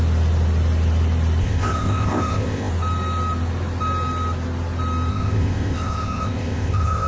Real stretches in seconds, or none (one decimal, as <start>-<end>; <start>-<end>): 0.0-1.4; 2.7-5.1